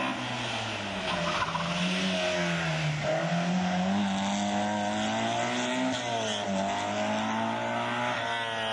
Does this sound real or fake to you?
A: real